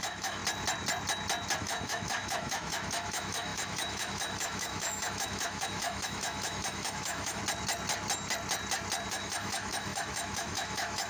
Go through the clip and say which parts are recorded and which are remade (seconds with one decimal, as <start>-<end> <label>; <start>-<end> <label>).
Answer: 0.0-0.4 remade; 0.4-1.6 recorded; 1.6-7.4 remade; 7.4-9.1 recorded; 9.1-11.1 remade